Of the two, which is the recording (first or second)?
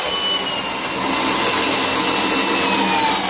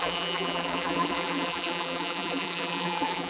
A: first